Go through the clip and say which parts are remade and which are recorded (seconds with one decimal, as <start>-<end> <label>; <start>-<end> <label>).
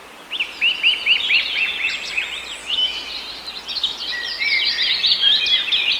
0.0-2.6 recorded; 2.6-3.1 remade; 3.1-6.0 recorded